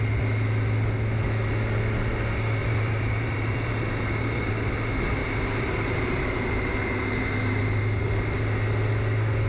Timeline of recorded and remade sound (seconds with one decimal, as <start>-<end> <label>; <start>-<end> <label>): 0.0-2.6 recorded; 2.6-4.5 remade; 4.5-5.2 recorded; 5.2-7.6 remade; 7.6-9.5 recorded